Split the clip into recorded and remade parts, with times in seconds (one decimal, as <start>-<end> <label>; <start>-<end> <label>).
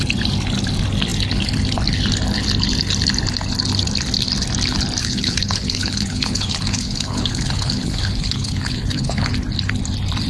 0.0-5.0 recorded; 5.0-9.3 remade; 9.3-10.3 recorded